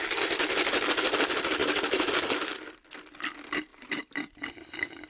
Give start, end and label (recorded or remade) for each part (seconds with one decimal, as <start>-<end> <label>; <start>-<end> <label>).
0.0-1.6 recorded; 1.6-2.1 remade; 2.1-3.7 recorded; 3.7-4.5 remade; 4.5-5.1 recorded